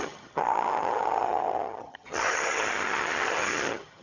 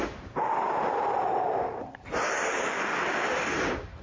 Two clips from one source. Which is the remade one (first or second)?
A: first